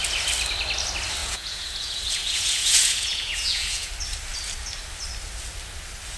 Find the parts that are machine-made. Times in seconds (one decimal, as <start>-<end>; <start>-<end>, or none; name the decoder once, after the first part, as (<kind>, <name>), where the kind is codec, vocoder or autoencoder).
1.2-3.9 (vocoder, Vocos)